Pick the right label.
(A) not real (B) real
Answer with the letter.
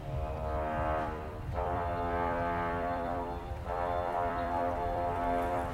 A